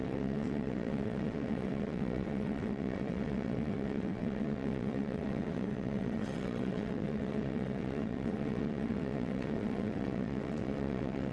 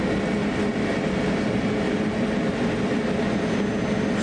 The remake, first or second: first